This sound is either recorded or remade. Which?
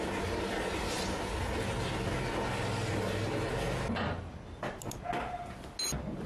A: recorded